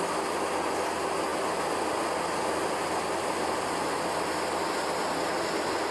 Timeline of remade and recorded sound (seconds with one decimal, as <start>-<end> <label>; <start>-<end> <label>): 0.0-5.9 recorded